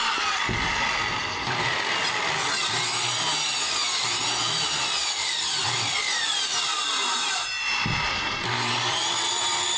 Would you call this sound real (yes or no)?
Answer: no